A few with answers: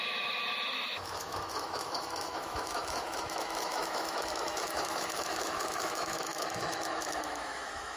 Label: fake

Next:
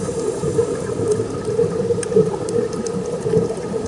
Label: fake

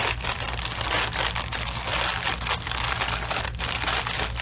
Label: real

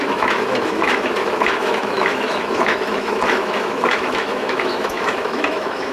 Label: fake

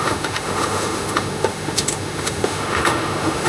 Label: fake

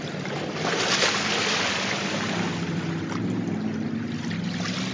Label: real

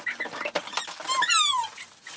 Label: real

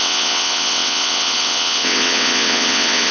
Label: fake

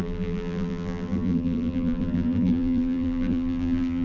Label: fake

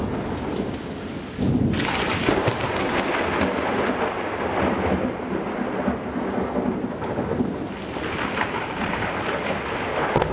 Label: real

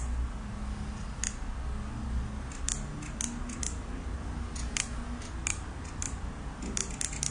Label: real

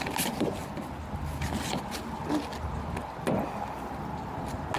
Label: real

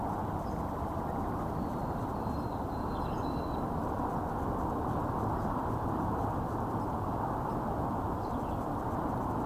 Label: real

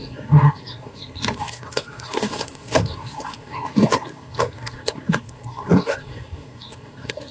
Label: fake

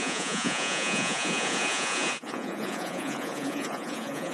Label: fake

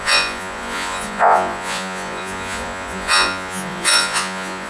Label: fake